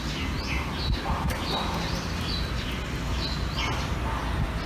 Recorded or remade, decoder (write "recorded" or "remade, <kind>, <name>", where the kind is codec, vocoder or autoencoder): recorded